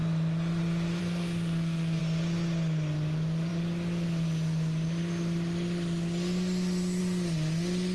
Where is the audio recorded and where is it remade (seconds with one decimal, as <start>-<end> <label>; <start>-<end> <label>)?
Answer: 0.0-1.0 recorded; 1.0-2.0 remade; 2.0-7.9 recorded

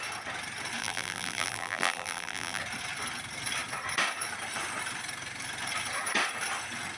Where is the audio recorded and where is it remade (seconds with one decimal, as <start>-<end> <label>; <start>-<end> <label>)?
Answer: 0.0-0.8 recorded; 0.8-2.6 remade; 2.6-7.0 recorded

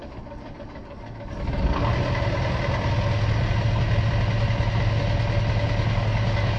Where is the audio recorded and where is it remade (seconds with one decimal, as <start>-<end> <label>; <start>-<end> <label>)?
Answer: 0.0-1.9 remade; 1.9-5.9 recorded; 5.9-6.6 remade